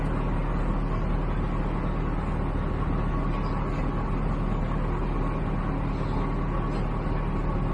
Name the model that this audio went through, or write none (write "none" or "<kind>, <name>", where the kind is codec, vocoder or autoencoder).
none